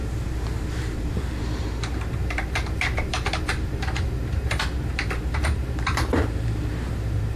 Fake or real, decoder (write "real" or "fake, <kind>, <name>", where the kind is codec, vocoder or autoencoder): fake, vocoder, BigVGAN v2